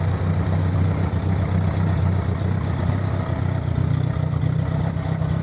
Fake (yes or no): no